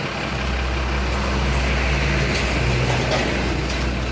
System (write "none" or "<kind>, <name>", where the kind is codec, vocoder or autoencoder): none